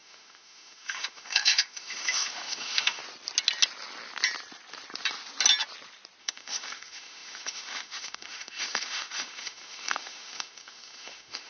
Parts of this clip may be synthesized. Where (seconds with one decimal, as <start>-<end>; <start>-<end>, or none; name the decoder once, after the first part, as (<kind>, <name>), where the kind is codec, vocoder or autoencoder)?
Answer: 0.0-3.0 (autoencoder, DAC-VAE); 6.2-11.5

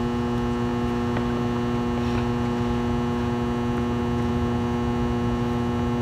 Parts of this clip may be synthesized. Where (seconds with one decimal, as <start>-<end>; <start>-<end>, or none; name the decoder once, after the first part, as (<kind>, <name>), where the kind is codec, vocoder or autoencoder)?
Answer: none

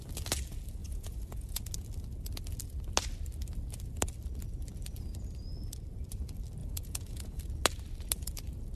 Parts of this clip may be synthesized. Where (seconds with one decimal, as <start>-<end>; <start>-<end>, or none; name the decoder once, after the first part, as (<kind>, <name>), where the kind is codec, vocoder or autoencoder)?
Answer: 0.8-1.6 (vocoder, Vocos); 6.6-7.4

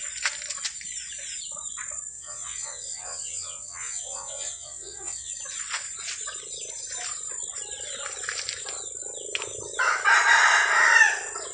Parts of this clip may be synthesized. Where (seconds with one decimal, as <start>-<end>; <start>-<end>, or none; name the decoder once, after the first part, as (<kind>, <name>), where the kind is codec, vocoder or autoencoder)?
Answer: 2.1-5.3 (vocoder, WaveNeXt)

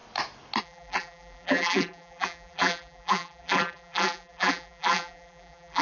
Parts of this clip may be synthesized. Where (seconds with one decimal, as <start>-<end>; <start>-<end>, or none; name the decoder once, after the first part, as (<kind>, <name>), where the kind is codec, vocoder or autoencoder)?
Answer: 0.6-5.8 (vocoder, BigVGAN v2)

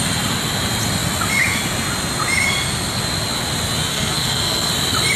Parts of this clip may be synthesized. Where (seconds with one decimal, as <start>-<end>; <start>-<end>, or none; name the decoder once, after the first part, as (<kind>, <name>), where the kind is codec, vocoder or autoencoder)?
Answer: 3.9-4.7 (codec, SNAC)